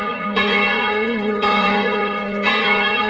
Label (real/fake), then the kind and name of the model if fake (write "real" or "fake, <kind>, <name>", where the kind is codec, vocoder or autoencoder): fake, vocoder, Vocos